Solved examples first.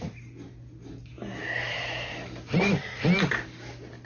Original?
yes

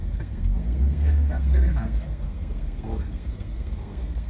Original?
no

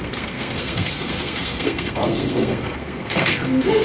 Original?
no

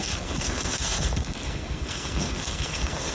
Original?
no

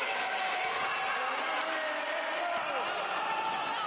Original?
yes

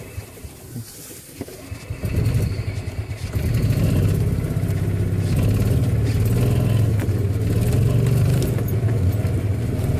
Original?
yes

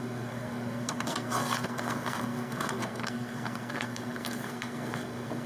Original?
no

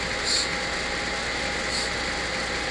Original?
yes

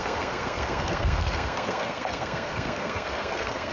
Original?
no